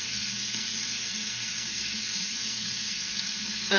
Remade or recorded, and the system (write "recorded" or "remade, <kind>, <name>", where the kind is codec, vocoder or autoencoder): remade, codec, SNAC